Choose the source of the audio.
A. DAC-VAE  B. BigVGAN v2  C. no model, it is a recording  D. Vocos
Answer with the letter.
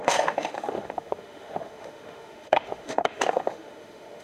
A